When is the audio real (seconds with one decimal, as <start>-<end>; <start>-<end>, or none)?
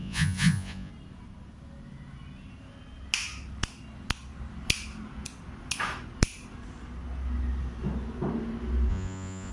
0.9-8.9